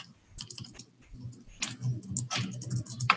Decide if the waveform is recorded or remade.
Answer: recorded